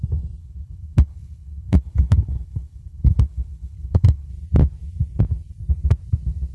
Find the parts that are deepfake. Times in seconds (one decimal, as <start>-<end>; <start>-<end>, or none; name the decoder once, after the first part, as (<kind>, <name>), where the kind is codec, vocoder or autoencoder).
0.4-4.3 (codec, HILCodec)